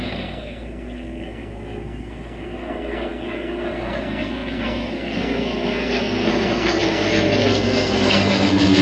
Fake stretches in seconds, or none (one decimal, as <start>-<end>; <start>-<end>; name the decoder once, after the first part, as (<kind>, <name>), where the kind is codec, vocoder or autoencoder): 0.0-8.8 (codec, SNAC)